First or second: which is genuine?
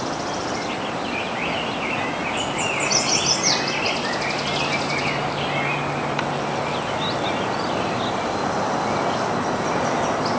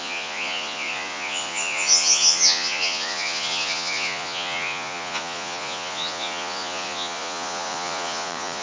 first